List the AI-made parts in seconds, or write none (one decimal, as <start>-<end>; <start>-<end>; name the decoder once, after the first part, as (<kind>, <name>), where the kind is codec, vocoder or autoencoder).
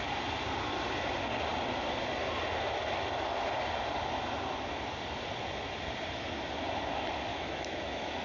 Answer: 7.3-8.2 (autoencoder, DAC-VAE)